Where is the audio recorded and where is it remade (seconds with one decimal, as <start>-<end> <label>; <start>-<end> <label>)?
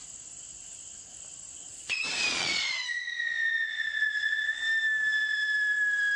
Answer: 0.0-1.7 recorded; 1.7-4.6 remade; 4.6-6.2 recorded